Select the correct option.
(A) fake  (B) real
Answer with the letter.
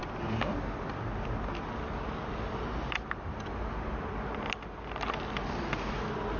B